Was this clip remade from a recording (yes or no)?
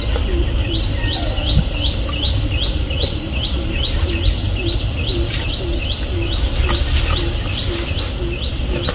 no